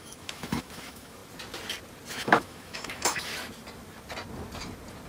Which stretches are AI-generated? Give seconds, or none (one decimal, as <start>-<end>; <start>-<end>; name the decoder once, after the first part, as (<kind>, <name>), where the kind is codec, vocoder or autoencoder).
0.0-1.2 (autoencoder, DAC-VAE); 2.1-3.3